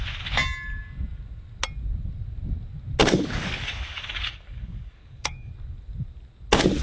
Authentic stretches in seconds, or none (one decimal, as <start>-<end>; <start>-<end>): 0.0-3.0; 5.5-6.8